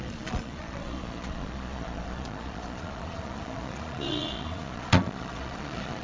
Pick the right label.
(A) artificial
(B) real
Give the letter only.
A